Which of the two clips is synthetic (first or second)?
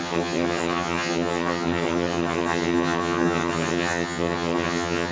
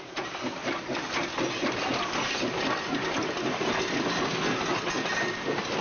first